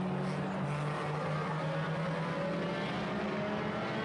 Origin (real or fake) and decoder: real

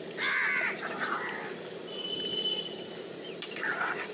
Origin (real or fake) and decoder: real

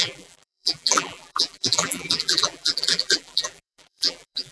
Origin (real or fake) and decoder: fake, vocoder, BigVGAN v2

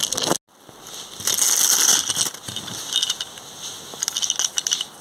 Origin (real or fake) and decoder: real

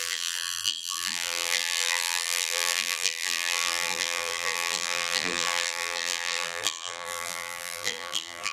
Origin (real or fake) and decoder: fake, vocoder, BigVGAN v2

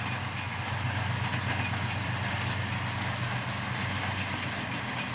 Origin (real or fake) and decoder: real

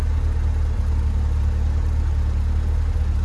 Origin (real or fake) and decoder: real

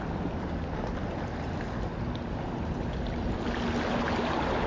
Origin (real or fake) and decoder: real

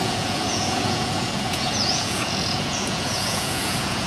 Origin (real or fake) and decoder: fake, vocoder, Vocos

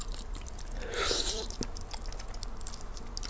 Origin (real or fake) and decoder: real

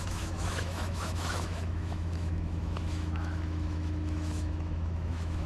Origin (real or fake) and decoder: fake, autoencoder, DAC-VAE